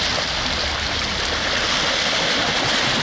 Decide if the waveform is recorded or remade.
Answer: recorded